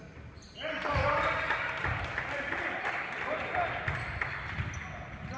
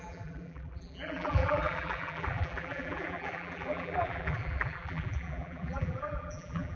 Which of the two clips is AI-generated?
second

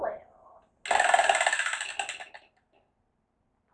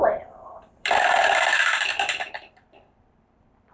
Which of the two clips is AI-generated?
second